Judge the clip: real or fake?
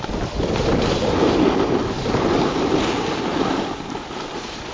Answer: real